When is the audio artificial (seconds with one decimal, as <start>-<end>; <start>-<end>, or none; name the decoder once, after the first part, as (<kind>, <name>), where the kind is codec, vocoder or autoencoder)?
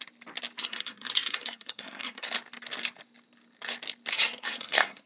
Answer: 0.6-2.3 (codec, SNAC); 4.1-5.1